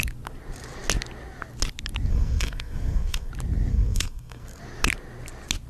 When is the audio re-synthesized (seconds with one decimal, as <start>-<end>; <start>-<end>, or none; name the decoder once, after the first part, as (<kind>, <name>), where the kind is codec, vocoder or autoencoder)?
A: 2.1-3.3 (codec, SNAC); 3.7-4.6